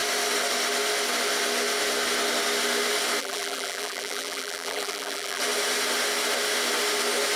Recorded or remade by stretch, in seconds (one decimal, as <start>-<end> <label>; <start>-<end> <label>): 0.0-3.2 recorded; 3.2-5.4 remade; 5.4-7.4 recorded